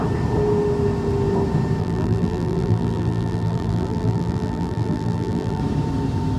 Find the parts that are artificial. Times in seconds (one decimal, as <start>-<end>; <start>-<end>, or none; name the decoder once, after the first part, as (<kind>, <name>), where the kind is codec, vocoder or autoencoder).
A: 1.8-5.6 (vocoder, BigVGAN v2)